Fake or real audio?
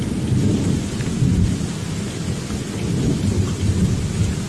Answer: real